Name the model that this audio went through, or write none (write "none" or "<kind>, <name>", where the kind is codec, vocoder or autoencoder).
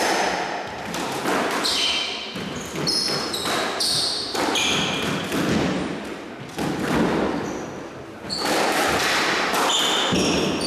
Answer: none